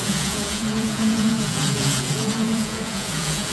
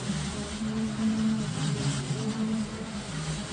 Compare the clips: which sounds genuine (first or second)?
second